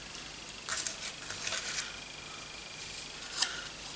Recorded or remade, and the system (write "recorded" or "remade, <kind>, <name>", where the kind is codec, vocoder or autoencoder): recorded